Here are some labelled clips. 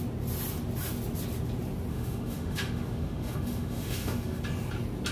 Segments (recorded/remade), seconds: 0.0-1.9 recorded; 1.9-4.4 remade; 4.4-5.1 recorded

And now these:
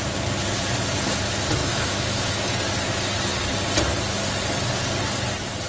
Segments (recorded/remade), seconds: 0.0-1.6 recorded; 1.6-2.3 remade; 2.3-5.7 recorded

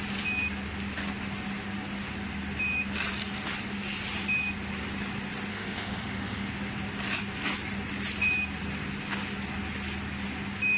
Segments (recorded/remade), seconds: 0.0-5.5 recorded; 5.5-6.5 remade; 6.5-10.8 recorded

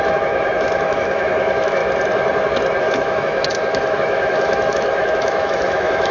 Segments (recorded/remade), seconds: 0.0-1.8 remade; 1.8-2.8 recorded; 2.8-6.1 remade

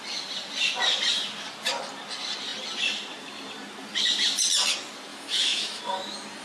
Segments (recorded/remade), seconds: 0.0-5.1 recorded; 5.1-5.8 remade; 5.8-6.4 recorded